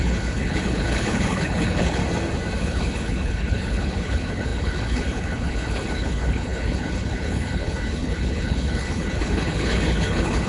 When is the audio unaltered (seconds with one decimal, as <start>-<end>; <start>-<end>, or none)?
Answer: 2.0-2.6